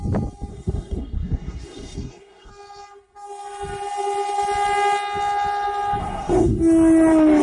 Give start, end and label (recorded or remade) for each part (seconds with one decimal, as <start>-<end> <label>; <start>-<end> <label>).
0.0-0.5 recorded; 0.5-2.5 remade; 2.5-6.0 recorded; 6.0-6.6 remade; 6.6-7.4 recorded